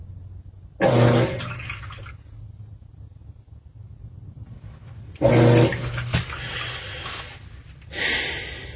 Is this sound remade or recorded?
recorded